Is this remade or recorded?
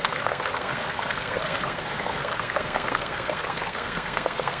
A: remade